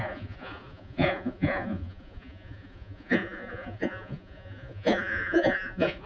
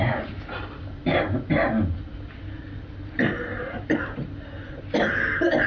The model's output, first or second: first